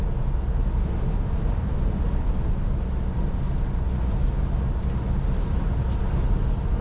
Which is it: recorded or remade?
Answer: recorded